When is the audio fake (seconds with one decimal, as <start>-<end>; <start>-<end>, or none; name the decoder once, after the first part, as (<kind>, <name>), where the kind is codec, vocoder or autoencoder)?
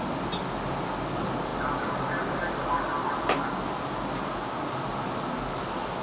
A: none